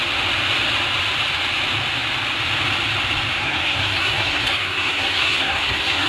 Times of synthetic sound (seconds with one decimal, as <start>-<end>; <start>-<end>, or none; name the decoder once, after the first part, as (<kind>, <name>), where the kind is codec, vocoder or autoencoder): 3.4-6.1 (codec, SNAC)